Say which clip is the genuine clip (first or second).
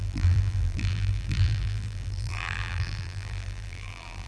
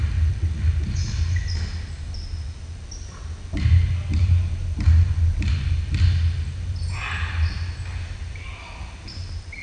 second